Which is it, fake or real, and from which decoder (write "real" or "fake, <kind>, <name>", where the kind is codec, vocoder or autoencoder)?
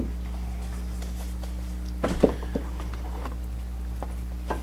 real